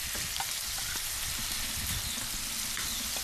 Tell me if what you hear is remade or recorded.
recorded